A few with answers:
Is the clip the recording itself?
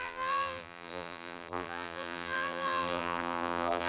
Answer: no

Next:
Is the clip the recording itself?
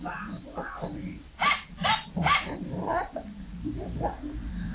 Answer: no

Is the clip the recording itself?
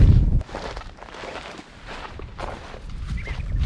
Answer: yes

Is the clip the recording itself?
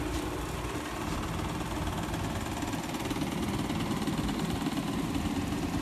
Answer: yes